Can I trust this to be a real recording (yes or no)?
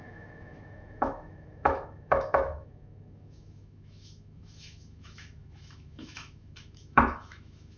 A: no